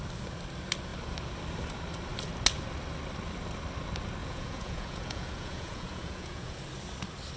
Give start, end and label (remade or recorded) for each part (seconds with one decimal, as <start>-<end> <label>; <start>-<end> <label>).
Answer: 0.0-4.2 recorded; 4.2-6.6 remade; 6.6-7.4 recorded